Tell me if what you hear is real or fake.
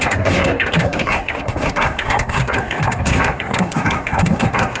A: fake